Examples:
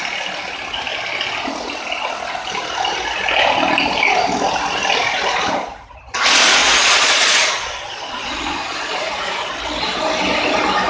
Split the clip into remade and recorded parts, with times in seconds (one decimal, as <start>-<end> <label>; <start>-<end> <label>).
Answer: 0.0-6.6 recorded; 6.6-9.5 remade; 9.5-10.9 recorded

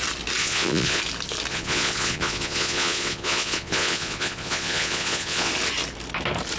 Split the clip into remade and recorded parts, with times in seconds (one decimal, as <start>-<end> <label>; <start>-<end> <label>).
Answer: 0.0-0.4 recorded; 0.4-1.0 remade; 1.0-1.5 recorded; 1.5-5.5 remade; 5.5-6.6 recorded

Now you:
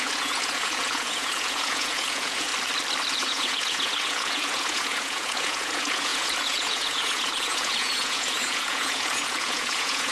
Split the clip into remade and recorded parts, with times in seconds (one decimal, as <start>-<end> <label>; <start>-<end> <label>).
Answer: 0.0-2.5 remade; 2.5-3.1 recorded; 3.1-10.1 remade

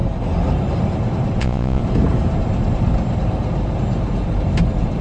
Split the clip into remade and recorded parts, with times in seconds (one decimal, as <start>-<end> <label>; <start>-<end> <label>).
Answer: 0.0-1.4 recorded; 1.4-1.8 remade; 1.8-5.0 recorded